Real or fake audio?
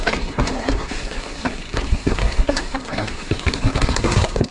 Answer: fake